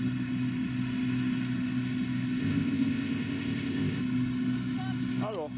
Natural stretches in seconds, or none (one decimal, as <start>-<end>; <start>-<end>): 0.0-2.4; 4.0-5.6